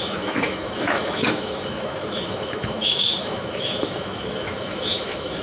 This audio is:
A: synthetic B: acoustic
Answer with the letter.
A